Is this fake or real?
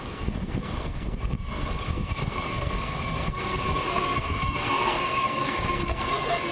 fake